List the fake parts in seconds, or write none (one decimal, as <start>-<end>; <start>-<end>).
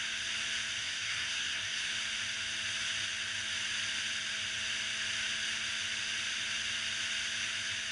0.8-1.9